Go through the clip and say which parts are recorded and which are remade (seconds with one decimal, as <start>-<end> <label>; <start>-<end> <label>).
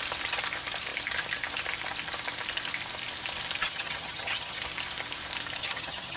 0.0-3.6 recorded; 3.6-4.6 remade; 4.6-5.6 recorded; 5.6-6.2 remade